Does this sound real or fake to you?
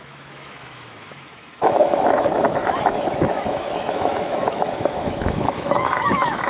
fake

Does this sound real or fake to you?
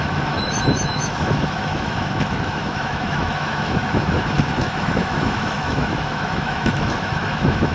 fake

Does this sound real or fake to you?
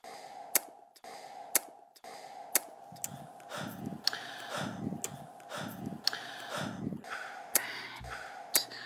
real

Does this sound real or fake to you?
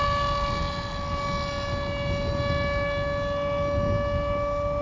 real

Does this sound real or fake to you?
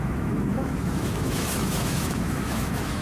fake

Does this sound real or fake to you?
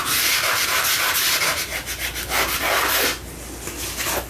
real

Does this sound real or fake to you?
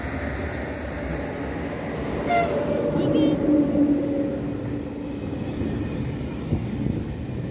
real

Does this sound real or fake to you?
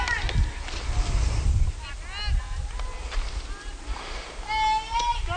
real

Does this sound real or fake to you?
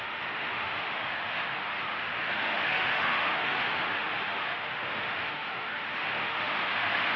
fake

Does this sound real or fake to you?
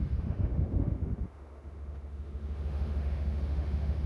fake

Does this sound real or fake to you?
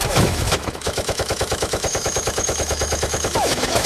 fake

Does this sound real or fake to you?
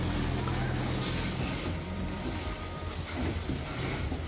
real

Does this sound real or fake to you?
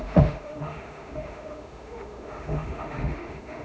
fake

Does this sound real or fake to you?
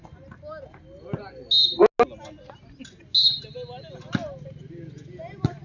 real